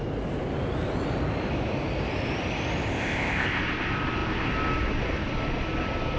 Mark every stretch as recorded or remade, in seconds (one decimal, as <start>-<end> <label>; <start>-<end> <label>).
0.0-2.9 recorded; 2.9-3.6 remade; 3.6-6.2 recorded